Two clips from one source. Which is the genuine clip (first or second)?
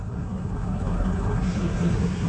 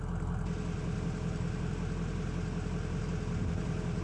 second